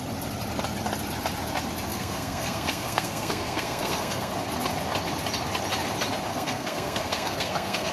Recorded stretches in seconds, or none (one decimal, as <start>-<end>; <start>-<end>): 0.0-1.9; 4.3-6.3